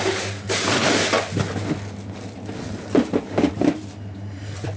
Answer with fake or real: real